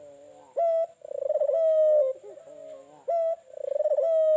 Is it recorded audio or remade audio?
recorded